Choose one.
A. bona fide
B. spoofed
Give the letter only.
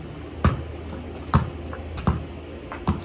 A